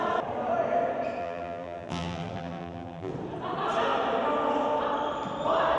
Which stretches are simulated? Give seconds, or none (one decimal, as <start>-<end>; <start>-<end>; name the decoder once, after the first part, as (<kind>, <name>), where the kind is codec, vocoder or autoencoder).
1.2-3.1 (vocoder, BigVGAN v2)